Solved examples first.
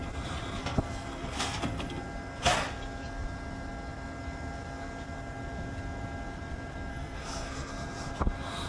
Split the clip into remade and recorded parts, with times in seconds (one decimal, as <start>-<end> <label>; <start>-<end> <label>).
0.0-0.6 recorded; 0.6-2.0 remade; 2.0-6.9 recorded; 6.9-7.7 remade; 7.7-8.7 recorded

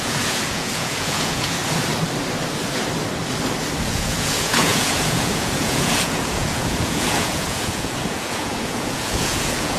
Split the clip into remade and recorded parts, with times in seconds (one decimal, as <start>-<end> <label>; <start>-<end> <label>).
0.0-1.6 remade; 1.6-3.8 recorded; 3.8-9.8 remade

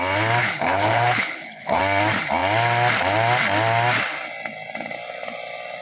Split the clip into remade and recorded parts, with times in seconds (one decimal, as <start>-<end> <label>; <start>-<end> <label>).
0.0-0.4 recorded; 0.4-1.8 remade; 1.8-5.8 recorded

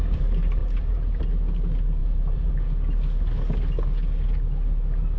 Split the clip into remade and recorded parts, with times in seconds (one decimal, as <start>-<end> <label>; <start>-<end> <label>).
0.0-0.6 recorded; 0.6-1.2 remade; 1.2-2.0 recorded; 2.0-2.5 remade; 2.5-5.2 recorded

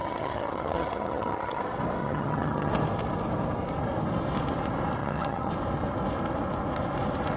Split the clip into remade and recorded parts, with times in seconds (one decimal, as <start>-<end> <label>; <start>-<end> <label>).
0.0-1.6 remade; 1.6-2.0 recorded; 2.0-2.7 remade; 2.7-5.0 recorded; 5.0-5.5 remade; 5.5-7.4 recorded